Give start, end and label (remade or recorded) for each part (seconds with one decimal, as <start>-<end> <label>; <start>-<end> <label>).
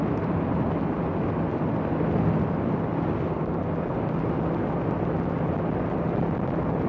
0.0-6.9 recorded